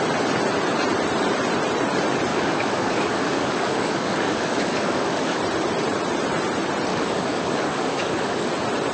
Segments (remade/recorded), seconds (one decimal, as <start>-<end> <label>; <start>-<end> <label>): 0.0-2.3 recorded; 2.3-5.4 remade; 5.4-6.9 recorded; 6.9-8.5 remade; 8.5-8.9 recorded